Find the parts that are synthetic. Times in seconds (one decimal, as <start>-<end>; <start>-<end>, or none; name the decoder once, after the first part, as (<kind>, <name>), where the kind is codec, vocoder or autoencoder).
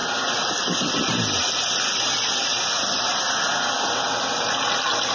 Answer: none